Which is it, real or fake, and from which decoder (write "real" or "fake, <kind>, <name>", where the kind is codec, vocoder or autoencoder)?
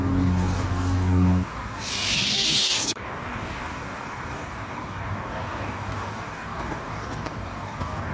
fake, codec, DAC